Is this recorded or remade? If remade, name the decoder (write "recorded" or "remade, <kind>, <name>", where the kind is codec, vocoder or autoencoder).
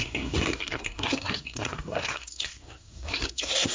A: remade, codec, SNAC